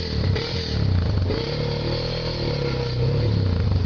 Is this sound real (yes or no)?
yes